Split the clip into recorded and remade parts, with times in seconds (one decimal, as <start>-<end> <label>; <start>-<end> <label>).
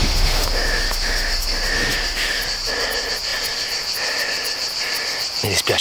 0.0-2.4 remade; 2.4-5.8 recorded